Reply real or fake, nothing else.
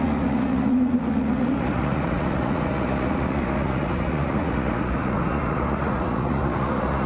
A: fake